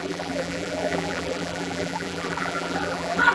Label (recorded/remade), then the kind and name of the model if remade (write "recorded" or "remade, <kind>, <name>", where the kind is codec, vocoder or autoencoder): remade, vocoder, BigVGAN v2